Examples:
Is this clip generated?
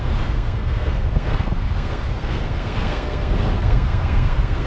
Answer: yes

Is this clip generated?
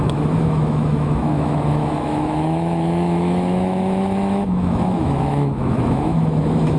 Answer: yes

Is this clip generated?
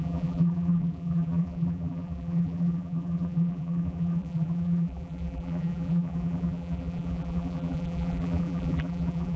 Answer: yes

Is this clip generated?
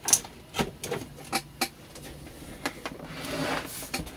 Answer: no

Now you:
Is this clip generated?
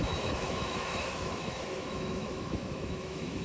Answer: yes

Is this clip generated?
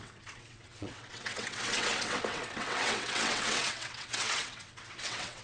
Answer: yes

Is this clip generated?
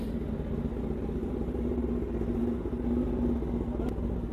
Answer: no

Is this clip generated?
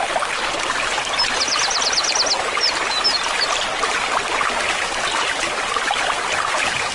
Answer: no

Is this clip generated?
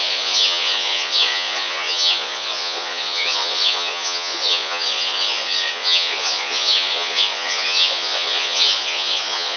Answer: yes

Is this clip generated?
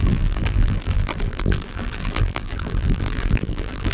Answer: yes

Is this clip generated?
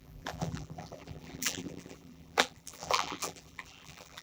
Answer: yes